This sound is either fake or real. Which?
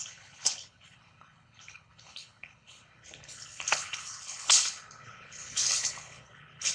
fake